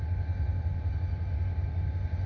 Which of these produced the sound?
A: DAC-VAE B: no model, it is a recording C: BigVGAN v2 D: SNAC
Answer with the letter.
B